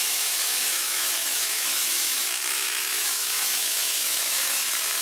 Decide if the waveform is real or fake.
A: fake